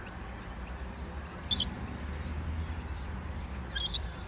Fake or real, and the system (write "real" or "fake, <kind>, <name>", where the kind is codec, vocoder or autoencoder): real